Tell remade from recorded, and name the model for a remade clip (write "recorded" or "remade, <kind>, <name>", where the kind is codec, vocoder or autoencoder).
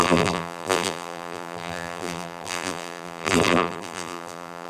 remade, vocoder, BigVGAN v2